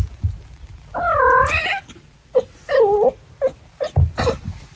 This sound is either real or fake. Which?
real